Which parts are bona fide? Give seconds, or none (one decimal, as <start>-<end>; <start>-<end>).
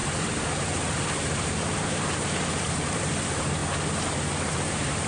3.6-4.5